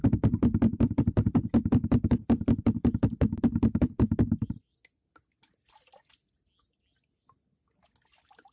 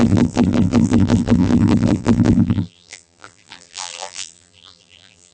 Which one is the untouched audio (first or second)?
first